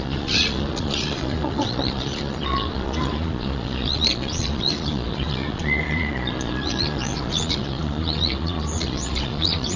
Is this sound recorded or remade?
remade